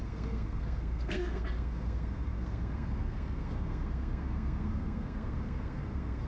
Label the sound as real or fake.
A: fake